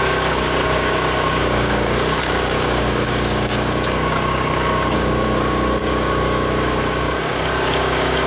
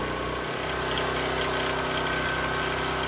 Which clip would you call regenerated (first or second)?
first